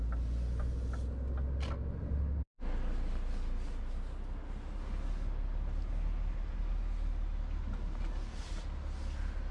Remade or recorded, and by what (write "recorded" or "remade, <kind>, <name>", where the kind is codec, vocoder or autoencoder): recorded